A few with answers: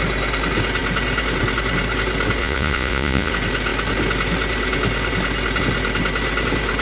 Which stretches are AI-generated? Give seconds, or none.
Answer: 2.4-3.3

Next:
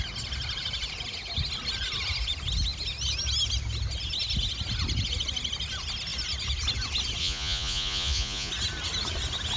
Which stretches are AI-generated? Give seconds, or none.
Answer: 7.2-8.5

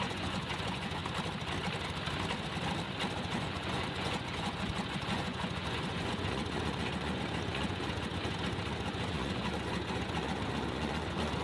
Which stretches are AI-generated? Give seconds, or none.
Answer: 0.0-1.0; 3.2-11.4

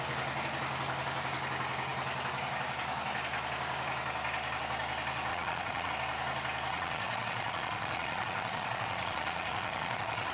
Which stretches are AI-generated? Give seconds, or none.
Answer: 5.3-5.9; 6.7-10.3